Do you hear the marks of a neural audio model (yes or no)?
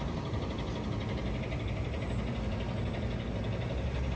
no